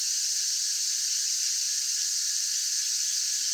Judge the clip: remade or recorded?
recorded